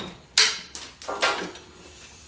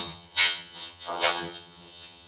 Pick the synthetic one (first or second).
second